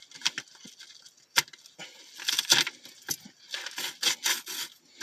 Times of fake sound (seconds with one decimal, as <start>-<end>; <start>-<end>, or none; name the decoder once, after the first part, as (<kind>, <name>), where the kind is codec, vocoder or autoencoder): none